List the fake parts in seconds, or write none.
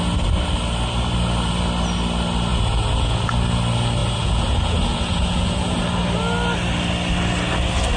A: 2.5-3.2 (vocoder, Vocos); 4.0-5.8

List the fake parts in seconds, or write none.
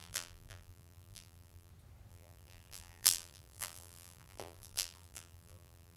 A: 0.0-1.7 (vocoder, BigVGAN v2); 2.1-6.0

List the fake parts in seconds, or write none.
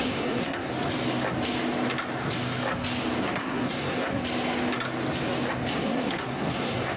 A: 0.0-0.7 (codec, SNAC); 3.2-4.2; 5.7-7.0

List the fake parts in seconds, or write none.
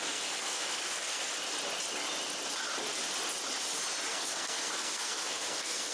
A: 0.0-1.2 (codec, SNAC); 4.1-5.9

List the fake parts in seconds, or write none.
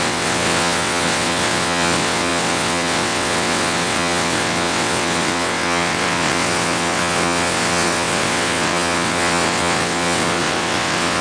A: 0.0-11.2 (vocoder, WaveNeXt)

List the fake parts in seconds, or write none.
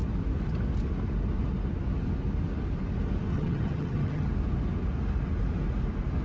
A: 3.3-4.3 (vocoder, HiFi-GAN)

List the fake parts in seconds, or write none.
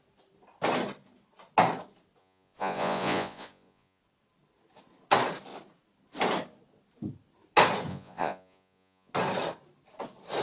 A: 2.2-4.0 (vocoder, Vocos); 7.9-9.1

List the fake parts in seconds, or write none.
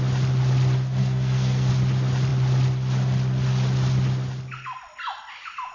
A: 1.0-1.7 (codec, SNAC)